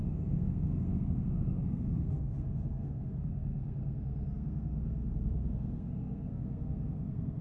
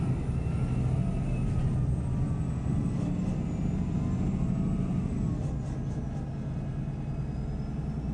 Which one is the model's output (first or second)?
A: first